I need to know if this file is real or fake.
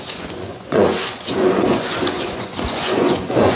fake